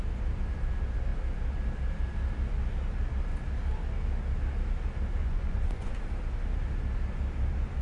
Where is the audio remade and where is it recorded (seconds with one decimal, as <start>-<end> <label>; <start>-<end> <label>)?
0.0-5.2 recorded; 5.2-5.9 remade; 5.9-7.8 recorded